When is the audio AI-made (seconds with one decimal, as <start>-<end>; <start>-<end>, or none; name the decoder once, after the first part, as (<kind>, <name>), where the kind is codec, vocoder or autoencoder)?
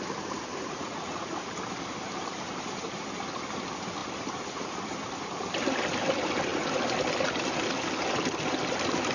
0.5-1.5 (vocoder, Vocos)